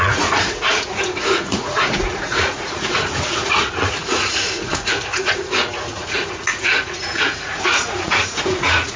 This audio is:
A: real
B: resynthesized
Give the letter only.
B